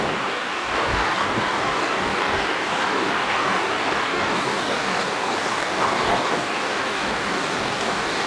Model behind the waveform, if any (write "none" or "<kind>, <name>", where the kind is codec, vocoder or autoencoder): codec, DAC